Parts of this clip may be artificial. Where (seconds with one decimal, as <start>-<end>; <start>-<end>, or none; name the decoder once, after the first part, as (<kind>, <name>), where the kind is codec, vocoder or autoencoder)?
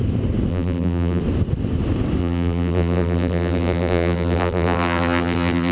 0.5-1.2 (vocoder, BigVGAN v2); 2.2-5.7